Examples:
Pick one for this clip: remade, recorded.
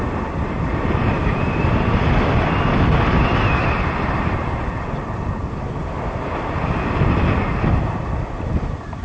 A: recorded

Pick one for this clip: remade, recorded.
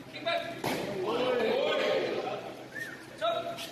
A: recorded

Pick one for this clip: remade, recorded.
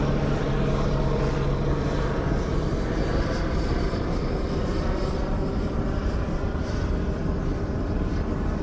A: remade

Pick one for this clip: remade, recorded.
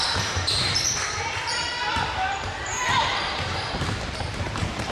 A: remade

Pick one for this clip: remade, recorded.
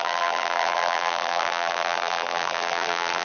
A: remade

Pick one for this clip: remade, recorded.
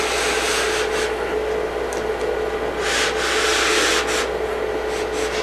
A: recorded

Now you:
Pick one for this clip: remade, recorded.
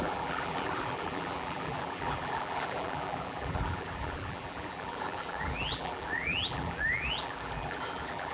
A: remade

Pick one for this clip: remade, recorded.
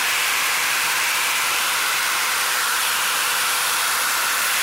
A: remade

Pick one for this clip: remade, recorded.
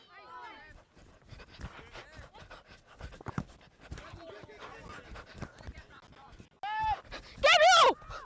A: recorded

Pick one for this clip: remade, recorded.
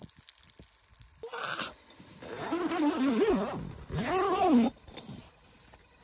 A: recorded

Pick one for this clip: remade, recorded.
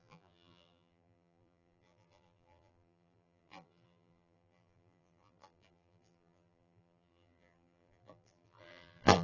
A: remade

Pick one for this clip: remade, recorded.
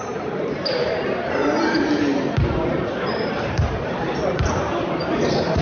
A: remade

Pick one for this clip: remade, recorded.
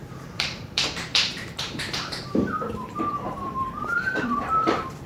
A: remade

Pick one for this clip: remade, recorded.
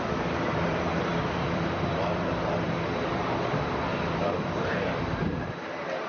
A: remade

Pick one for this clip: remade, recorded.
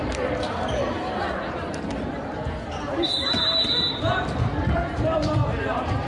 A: remade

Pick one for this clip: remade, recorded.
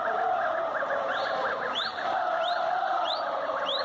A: remade